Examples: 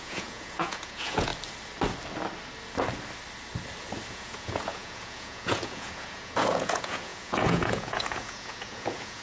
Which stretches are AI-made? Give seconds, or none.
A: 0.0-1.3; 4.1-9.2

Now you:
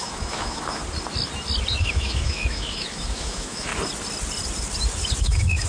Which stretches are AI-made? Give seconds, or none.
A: 0.0-0.8; 1.8-3.7; 5.2-5.7

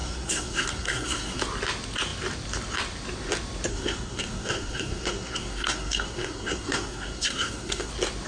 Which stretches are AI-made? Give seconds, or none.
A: 0.0-1.4; 3.7-7.9

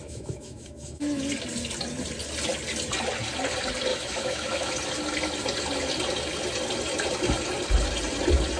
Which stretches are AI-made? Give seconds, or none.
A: 0.0-1.2; 3.9-4.7

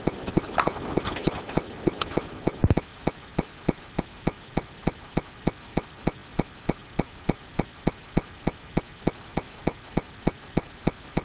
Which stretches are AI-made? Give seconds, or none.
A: none

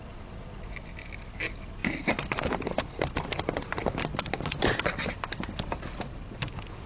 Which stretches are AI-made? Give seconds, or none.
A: none

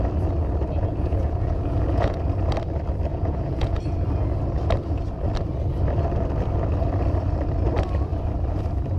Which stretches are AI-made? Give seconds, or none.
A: 0.8-2.2; 3.1-3.8

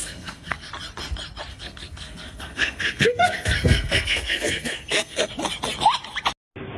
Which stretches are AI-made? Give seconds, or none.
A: 0.0-0.7; 1.5-5.3